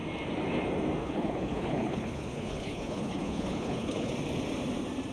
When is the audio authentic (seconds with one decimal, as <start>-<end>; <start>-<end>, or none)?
0.0-1.0; 4.1-5.1